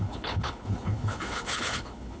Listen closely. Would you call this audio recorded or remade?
remade